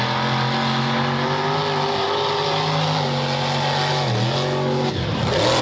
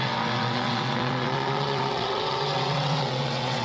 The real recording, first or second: first